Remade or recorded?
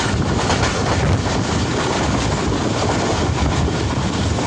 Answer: recorded